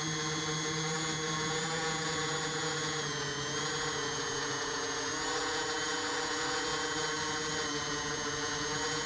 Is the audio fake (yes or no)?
yes